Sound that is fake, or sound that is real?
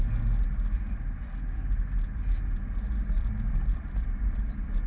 real